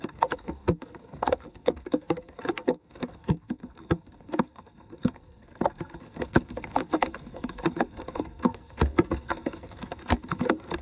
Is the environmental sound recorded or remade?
remade